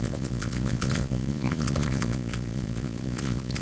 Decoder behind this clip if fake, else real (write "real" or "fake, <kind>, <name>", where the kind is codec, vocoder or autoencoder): fake, vocoder, Vocos